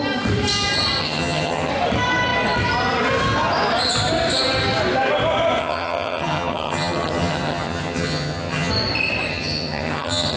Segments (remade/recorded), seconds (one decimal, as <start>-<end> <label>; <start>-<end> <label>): 0.0-1.0 recorded; 1.0-1.7 remade; 1.7-5.6 recorded; 5.6-8.7 remade; 8.7-9.3 recorded; 9.3-10.4 remade